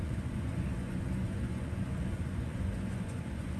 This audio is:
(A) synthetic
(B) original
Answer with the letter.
A